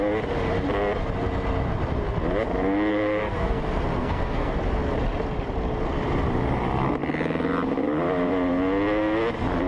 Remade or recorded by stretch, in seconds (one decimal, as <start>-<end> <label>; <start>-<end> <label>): 0.0-2.9 recorded; 2.9-3.6 remade; 3.6-4.0 recorded; 4.0-4.5 remade; 4.5-9.7 recorded